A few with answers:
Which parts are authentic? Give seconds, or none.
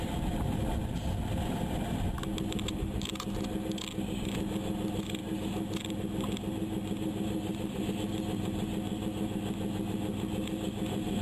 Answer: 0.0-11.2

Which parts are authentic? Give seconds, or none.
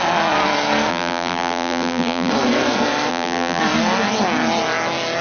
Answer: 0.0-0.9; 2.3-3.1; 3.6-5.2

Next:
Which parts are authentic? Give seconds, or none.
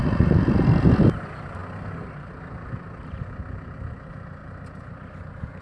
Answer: 0.0-4.4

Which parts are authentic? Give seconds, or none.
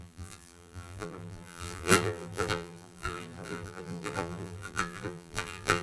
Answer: none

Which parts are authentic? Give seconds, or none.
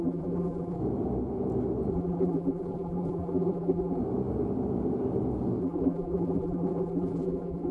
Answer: 0.8-1.9; 4.0-5.6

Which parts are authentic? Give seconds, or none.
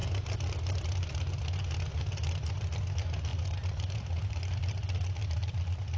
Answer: 0.0-3.3; 5.6-6.0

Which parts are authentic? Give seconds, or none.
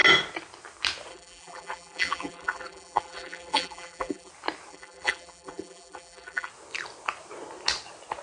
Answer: 0.0-1.1; 4.3-4.7; 6.5-8.2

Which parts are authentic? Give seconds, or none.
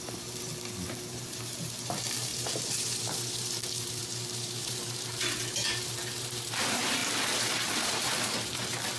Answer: 0.5-1.1; 7.0-8.0